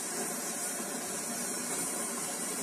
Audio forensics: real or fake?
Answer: fake